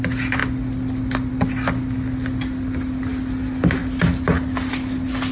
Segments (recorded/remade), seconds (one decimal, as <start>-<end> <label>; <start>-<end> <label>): 0.0-5.3 recorded